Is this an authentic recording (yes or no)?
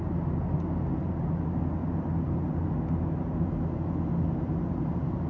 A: yes